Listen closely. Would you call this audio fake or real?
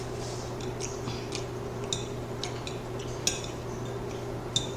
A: real